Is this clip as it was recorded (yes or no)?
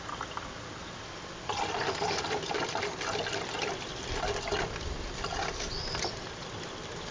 yes